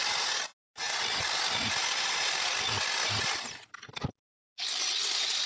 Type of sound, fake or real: real